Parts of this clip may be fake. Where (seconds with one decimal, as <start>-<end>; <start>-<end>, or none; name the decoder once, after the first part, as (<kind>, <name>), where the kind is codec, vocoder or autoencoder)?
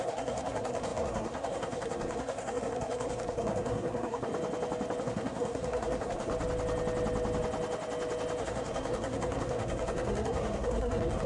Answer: 0.0-4.3 (codec, SNAC); 5.0-6.3; 8.4-11.3